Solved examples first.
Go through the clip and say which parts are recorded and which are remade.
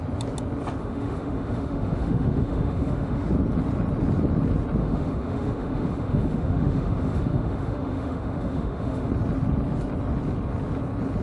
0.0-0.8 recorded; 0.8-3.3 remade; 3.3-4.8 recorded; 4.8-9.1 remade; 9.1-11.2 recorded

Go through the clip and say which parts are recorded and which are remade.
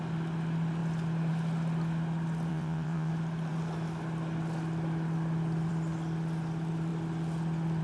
0.0-2.5 recorded; 2.5-3.1 remade; 3.1-7.8 recorded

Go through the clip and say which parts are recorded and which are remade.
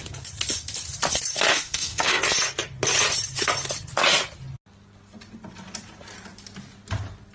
0.0-1.5 recorded; 1.5-2.2 remade; 2.2-7.3 recorded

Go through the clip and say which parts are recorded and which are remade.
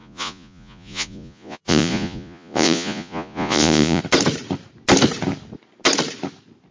0.0-4.0 remade; 4.0-6.7 recorded